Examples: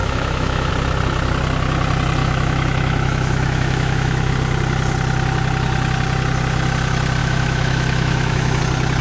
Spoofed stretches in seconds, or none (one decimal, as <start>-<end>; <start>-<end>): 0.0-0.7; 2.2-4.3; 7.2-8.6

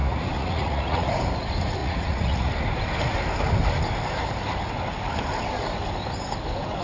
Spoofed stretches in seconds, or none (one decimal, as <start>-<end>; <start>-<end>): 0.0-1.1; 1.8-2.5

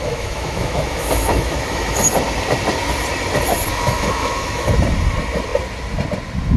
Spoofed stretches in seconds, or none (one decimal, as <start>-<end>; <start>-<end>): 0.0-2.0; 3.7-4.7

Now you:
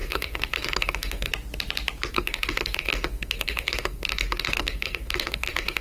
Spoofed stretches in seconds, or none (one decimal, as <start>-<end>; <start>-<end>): 0.0-1.3; 2.1-5.8